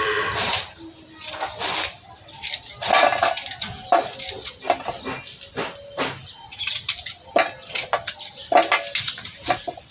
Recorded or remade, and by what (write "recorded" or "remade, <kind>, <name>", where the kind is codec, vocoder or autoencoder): recorded